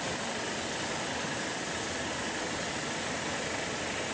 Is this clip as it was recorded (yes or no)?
yes